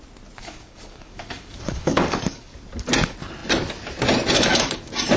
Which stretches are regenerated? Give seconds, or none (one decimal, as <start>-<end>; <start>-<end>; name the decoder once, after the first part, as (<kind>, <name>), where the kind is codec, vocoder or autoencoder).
0.4-2.6 (codec, DAC)

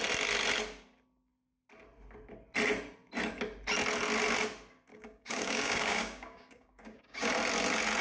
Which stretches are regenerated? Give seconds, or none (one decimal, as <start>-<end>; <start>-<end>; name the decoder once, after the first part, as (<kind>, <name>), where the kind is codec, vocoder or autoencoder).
4.9-7.3 (codec, DAC)

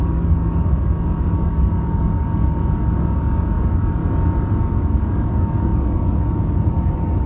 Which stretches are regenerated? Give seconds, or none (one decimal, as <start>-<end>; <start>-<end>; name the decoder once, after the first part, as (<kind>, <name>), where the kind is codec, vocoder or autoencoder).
0.0-4.0 (codec, DAC); 4.6-7.3

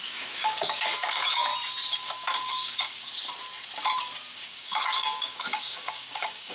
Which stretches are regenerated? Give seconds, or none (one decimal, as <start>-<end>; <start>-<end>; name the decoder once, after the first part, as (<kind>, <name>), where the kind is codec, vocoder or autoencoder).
0.0-1.5 (codec, DAC); 2.0-3.1; 4.3-6.5

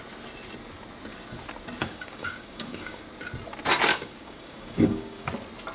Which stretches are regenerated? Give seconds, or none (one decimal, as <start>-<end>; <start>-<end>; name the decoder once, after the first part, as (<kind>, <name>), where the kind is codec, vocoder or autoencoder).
1.8-3.0 (codec, DAC); 3.9-5.3

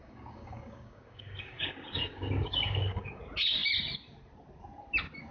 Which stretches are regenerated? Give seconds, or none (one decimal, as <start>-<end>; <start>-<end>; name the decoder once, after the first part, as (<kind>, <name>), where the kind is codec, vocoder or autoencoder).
0.0-3.2 (codec, DAC)

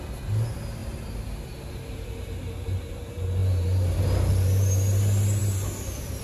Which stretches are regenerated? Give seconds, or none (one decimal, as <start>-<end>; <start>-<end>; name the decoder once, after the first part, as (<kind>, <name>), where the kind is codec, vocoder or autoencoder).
none

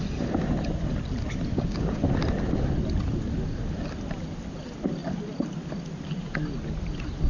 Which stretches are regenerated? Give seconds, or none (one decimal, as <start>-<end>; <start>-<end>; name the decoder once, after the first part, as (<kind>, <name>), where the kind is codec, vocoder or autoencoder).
1.5-2.0 (codec, DAC)